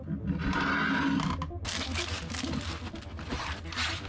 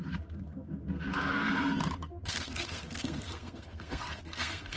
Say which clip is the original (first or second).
first